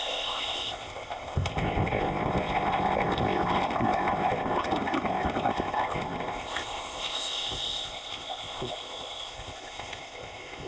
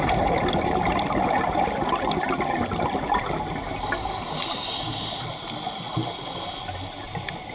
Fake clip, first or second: first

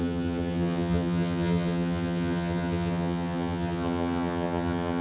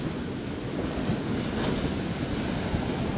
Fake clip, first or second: first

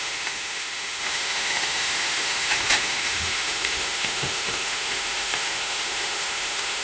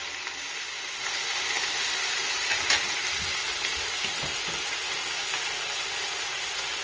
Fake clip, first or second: first